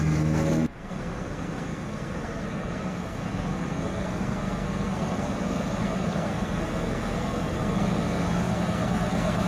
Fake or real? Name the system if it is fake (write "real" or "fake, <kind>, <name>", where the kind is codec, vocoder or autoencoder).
fake, codec, SNAC